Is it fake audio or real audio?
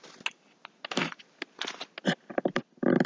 real